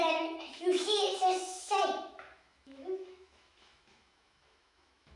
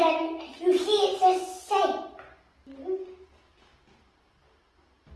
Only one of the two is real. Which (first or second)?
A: second